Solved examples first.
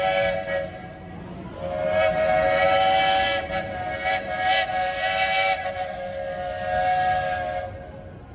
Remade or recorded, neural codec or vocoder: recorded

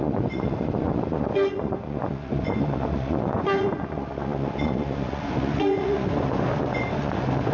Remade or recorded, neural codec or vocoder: remade, vocoder, Vocos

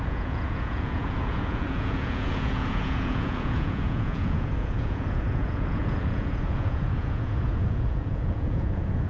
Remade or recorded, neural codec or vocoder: remade, vocoder, Vocos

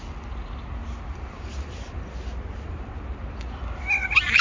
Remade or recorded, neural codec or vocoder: recorded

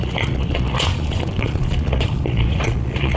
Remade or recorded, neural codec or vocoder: remade, vocoder, Vocos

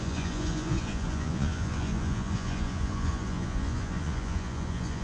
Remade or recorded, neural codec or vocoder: remade, vocoder, Vocos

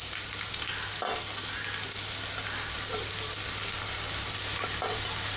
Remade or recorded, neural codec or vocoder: recorded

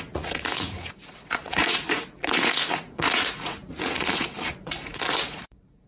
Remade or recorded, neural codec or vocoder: remade, vocoder, Vocos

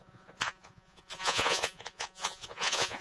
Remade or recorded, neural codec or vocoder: remade, vocoder, Vocos